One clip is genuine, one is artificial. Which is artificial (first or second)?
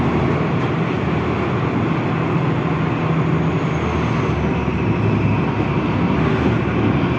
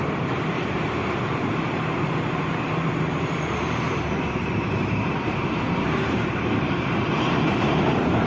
second